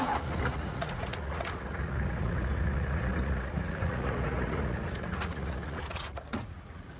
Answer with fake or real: fake